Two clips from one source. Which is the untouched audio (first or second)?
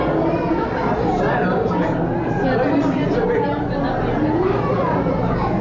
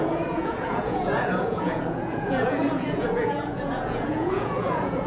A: first